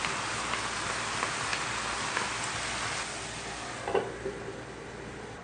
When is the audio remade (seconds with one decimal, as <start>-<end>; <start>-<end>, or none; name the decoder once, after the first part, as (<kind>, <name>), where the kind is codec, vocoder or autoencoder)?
none